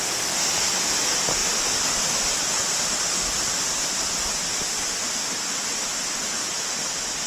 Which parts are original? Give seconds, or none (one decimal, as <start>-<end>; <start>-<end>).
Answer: 0.0-7.3